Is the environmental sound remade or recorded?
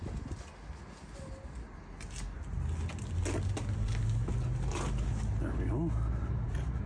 recorded